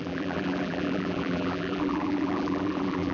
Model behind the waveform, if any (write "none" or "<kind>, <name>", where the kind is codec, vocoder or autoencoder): vocoder, BigVGAN v2